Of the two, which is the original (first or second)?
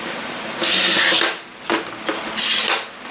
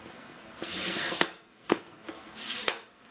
first